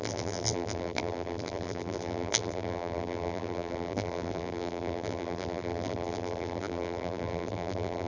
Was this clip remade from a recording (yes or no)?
yes